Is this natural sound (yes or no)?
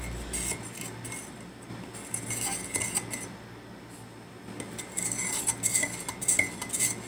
yes